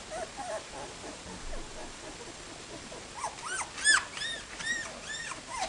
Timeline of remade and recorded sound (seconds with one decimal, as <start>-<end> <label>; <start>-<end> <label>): 0.0-5.7 recorded